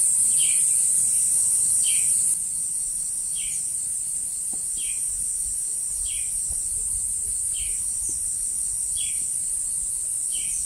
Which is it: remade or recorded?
recorded